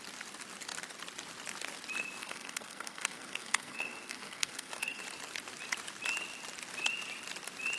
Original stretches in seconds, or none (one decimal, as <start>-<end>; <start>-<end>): 0.0-2.2; 5.0-7.8